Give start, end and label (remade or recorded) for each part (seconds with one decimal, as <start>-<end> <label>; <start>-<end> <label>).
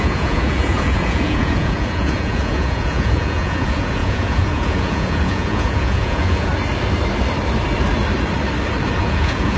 0.0-6.5 remade; 6.5-9.0 recorded; 9.0-9.6 remade